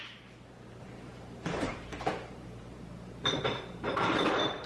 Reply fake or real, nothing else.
fake